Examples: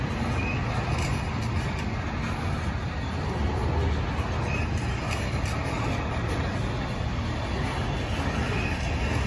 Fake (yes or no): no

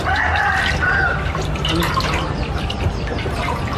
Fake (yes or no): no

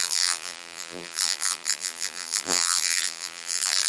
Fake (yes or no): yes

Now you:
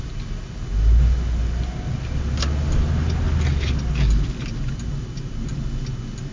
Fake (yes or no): no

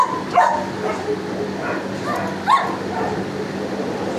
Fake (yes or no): no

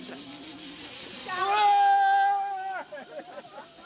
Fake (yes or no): no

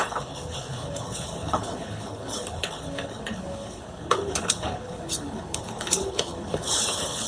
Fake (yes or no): yes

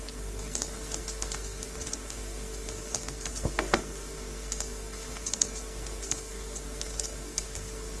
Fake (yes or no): yes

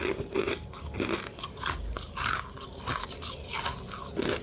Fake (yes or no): no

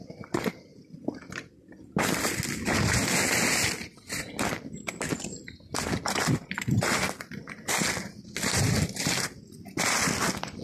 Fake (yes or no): no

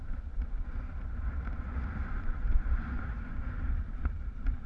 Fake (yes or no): yes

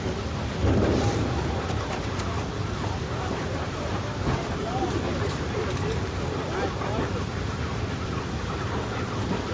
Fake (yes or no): yes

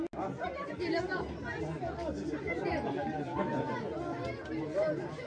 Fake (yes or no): no